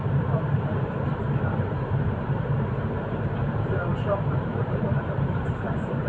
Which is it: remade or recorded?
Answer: remade